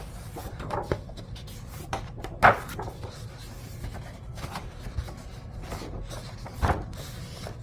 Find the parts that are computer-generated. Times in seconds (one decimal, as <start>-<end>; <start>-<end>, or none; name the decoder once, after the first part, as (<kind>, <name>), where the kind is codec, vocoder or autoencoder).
none